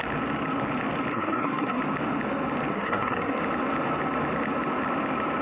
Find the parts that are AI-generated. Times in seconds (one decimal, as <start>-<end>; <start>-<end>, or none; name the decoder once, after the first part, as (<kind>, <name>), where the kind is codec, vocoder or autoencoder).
1.1-1.8 (codec, SNAC); 2.7-3.4